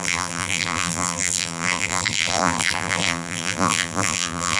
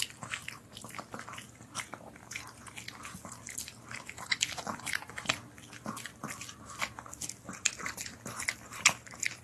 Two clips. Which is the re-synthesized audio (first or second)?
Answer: first